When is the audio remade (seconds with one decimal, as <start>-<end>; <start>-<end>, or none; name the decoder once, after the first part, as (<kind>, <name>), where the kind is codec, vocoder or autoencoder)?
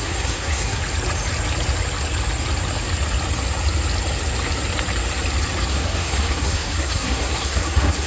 0.0-0.8 (codec, SNAC); 5.7-8.1